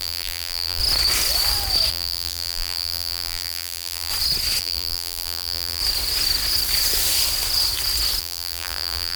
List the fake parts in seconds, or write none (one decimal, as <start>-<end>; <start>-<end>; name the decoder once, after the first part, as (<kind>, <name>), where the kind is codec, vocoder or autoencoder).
0.0-0.8 (vocoder, BigVGAN v2); 1.9-4.1; 4.6-5.8; 8.2-9.2